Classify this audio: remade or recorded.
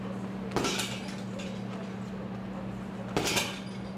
recorded